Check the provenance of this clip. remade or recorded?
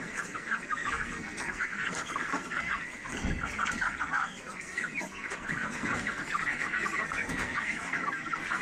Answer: remade